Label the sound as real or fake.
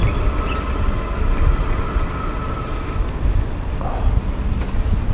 real